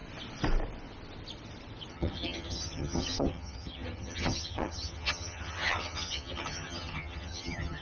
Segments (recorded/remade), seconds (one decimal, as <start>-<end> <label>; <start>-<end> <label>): 0.0-1.9 recorded; 1.9-7.8 remade